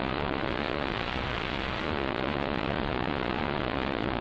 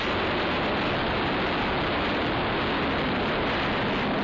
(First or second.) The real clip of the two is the second